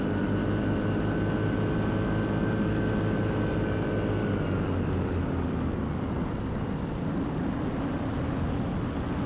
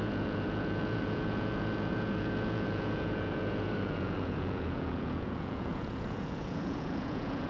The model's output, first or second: second